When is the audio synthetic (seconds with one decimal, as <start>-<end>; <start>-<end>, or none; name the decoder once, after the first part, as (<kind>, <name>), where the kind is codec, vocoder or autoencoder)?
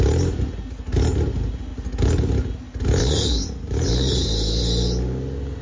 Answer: none